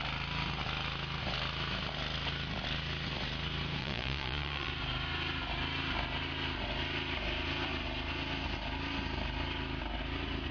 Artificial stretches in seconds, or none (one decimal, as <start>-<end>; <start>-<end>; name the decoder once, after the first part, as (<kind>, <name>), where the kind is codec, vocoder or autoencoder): 3.8-4.7 (vocoder, Vocos)